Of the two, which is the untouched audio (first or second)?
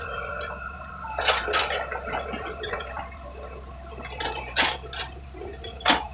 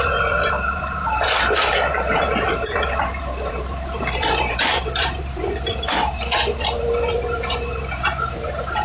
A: first